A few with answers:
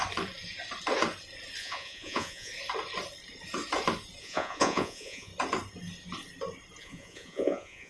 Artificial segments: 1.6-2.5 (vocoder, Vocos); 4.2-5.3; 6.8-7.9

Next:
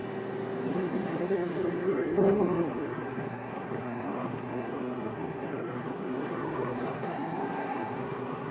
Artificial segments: 0.7-8.5 (codec, SNAC)